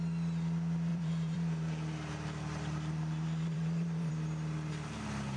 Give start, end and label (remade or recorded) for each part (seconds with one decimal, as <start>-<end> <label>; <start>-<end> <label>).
0.0-0.9 recorded; 0.9-4.1 remade; 4.1-5.4 recorded